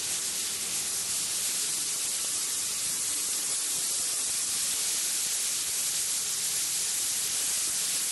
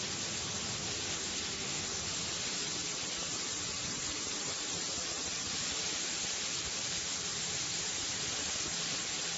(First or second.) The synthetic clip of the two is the second